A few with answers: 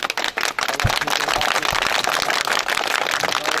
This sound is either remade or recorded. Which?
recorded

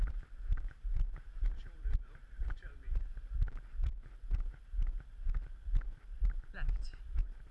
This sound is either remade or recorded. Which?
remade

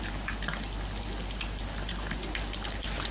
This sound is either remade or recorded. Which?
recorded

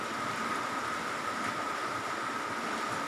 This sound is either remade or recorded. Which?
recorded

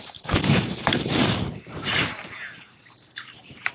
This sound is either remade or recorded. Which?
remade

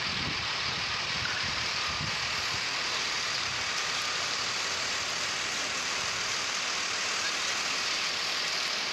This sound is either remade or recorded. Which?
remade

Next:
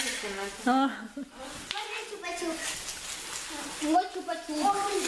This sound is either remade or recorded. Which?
recorded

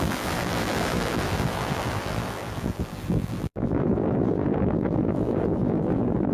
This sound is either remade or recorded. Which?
remade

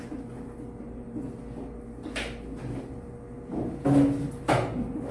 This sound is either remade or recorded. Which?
recorded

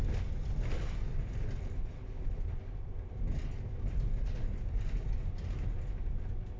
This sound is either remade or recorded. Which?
recorded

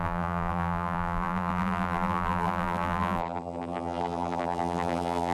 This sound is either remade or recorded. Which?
remade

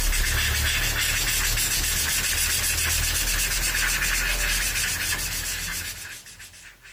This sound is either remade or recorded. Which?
recorded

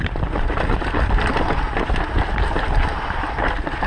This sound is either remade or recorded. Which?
recorded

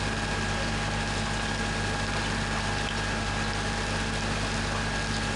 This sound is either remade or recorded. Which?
recorded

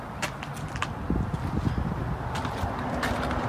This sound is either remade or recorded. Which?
recorded